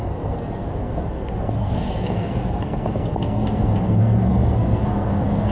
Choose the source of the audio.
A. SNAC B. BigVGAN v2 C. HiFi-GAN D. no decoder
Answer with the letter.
A